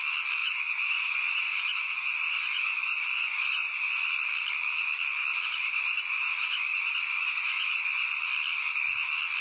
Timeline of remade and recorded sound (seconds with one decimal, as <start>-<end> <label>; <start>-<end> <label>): 0.0-0.4 recorded; 0.4-4.1 remade; 4.1-5.3 recorded; 5.3-8.1 remade; 8.1-9.4 recorded

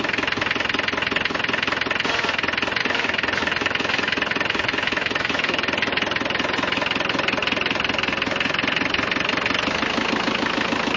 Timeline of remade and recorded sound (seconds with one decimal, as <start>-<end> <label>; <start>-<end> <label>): 0.0-2.8 recorded; 2.8-5.9 remade; 5.9-11.0 recorded

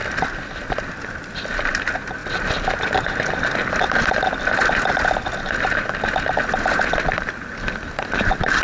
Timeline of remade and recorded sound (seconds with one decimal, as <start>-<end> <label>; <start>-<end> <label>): 0.0-8.6 recorded

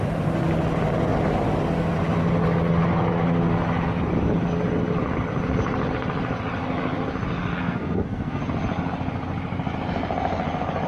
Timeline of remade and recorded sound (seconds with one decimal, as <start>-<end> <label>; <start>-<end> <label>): 0.0-7.6 recorded; 7.6-8.4 remade; 8.4-10.9 recorded

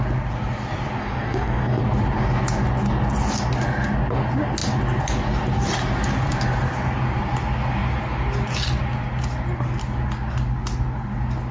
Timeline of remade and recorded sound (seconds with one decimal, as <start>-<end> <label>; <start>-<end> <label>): 0.0-1.0 recorded; 1.0-1.8 remade; 1.8-11.5 recorded

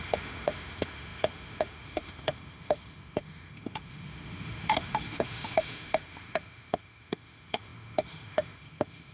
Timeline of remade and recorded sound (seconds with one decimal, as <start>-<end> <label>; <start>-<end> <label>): 0.0-9.1 remade